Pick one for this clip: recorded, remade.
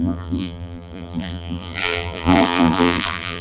remade